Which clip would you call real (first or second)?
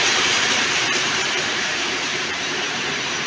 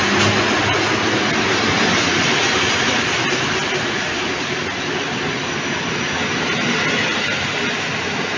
second